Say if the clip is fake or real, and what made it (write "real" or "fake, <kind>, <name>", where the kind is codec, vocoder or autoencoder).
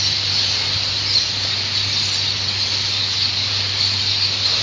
real